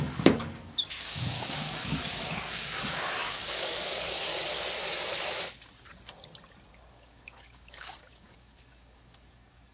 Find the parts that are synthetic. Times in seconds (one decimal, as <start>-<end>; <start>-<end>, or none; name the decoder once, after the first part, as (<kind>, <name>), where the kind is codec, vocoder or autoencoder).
0.0-4.3 (codec, DAC); 6.9-9.7